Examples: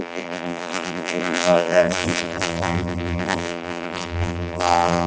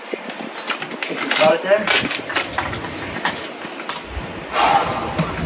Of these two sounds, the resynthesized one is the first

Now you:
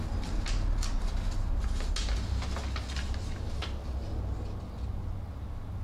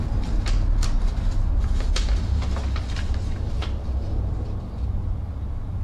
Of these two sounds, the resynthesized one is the second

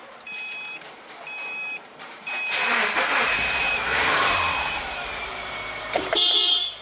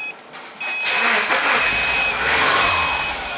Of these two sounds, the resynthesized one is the first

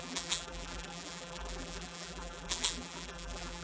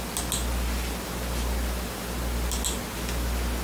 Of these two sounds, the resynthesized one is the first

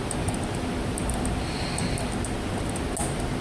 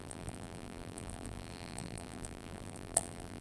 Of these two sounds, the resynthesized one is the second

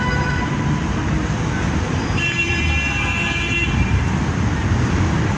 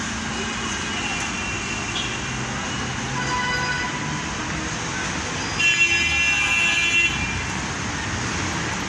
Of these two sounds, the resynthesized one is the first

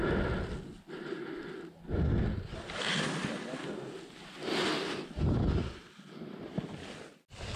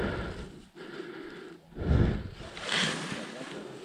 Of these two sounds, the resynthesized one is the second